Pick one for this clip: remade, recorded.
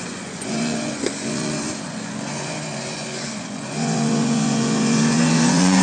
remade